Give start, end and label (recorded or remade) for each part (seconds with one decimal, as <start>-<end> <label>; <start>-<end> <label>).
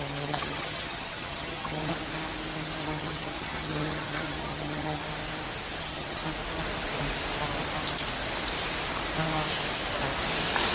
0.0-1.9 remade; 1.9-2.8 recorded; 2.8-5.0 remade; 5.0-5.8 recorded; 5.8-6.2 remade; 6.2-10.7 recorded